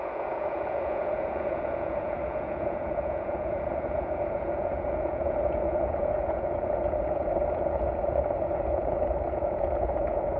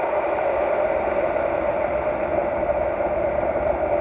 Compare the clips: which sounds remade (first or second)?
first